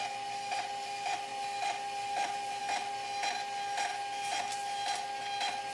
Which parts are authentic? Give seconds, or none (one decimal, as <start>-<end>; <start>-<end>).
0.0-5.7

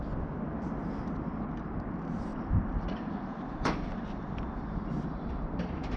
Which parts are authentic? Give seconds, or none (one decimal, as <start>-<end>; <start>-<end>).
0.0-2.3